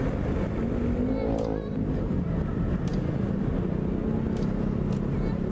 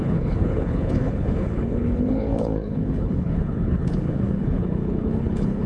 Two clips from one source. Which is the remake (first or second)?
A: second